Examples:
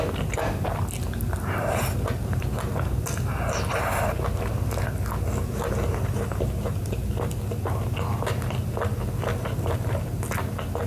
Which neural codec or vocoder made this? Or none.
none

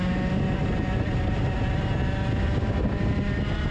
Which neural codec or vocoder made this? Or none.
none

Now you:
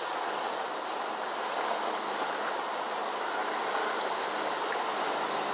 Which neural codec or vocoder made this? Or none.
none